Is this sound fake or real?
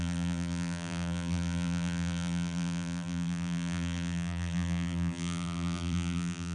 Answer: fake